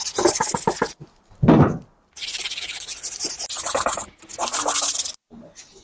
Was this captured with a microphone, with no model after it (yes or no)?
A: yes